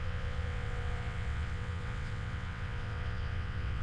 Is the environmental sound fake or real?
fake